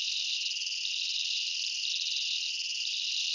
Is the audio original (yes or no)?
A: yes